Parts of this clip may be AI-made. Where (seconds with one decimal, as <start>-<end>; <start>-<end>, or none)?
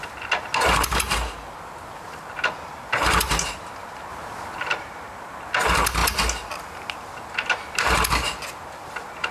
none